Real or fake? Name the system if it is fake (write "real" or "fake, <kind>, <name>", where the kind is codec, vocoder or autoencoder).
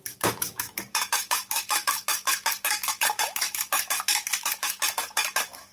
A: fake, autoencoder, DAC-VAE